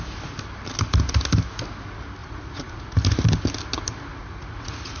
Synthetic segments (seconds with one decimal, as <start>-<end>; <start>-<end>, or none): 2.2-2.8; 4.1-5.0